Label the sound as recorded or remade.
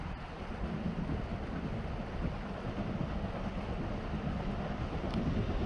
recorded